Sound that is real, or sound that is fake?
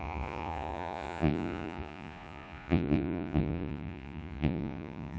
fake